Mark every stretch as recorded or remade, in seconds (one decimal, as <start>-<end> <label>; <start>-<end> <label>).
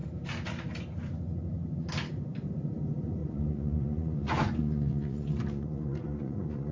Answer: 0.0-3.2 recorded; 3.2-6.7 remade